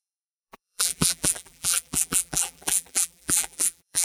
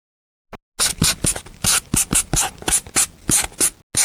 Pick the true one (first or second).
second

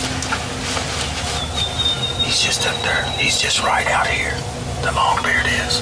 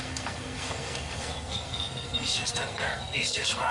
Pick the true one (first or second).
first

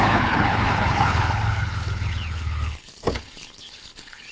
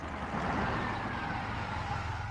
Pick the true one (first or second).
second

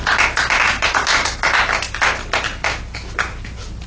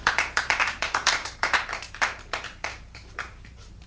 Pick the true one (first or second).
first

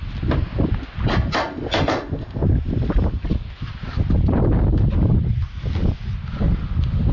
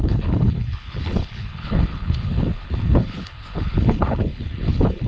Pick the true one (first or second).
first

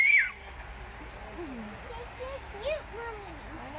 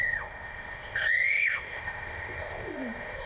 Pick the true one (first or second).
first